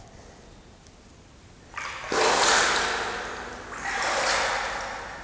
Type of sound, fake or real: real